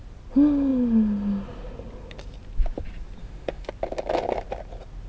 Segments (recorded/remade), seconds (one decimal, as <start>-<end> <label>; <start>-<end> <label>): 0.0-3.2 recorded; 3.2-3.7 remade; 3.7-5.1 recorded